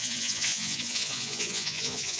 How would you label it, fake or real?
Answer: fake